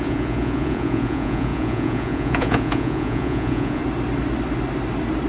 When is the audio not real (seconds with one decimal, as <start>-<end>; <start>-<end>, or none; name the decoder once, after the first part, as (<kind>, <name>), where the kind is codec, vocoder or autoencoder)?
0.0-3.8 (vocoder, Vocos)